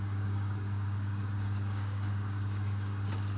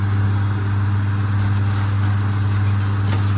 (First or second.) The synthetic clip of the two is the first